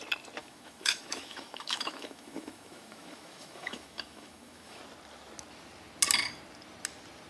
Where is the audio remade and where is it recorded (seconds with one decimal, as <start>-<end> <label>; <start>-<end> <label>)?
0.0-0.4 recorded; 0.4-4.8 remade; 4.8-7.3 recorded